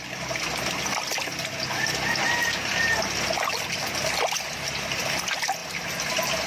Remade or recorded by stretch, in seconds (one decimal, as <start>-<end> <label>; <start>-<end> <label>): 0.0-6.5 recorded